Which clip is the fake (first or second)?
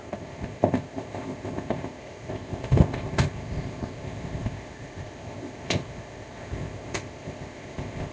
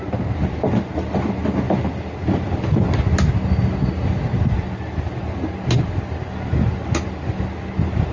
first